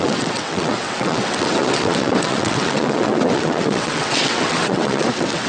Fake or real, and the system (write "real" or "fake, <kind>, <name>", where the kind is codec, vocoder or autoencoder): fake, vocoder, WaveNeXt